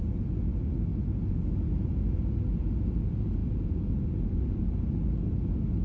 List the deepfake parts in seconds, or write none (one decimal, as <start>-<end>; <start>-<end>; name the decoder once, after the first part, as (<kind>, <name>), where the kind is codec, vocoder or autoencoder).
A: 3.4-4.7 (vocoder, Vocos)